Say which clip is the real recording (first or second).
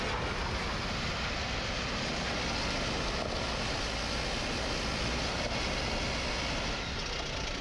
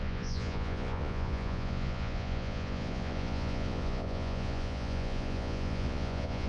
first